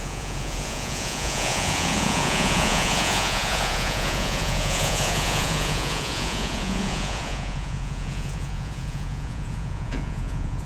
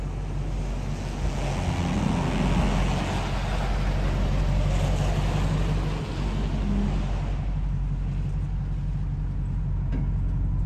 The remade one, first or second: first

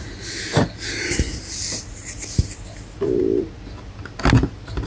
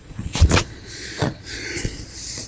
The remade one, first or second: second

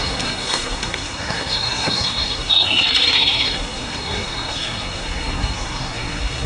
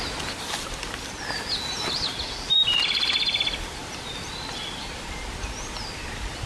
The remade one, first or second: first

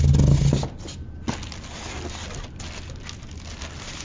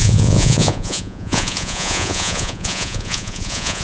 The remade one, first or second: second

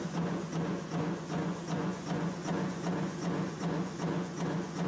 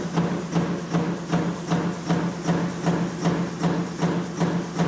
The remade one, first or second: first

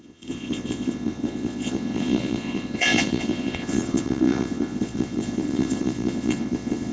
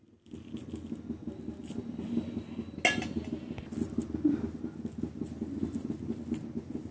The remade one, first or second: first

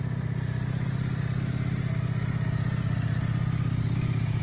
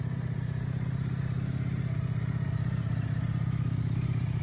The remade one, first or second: second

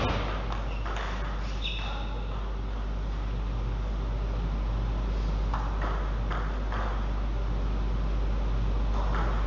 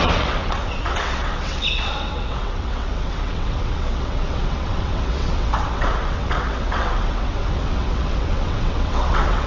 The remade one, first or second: second